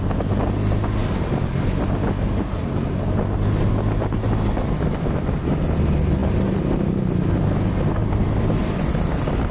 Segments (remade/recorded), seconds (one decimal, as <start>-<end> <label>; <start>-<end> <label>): 0.0-8.0 recorded; 8.0-9.1 remade; 9.1-9.5 recorded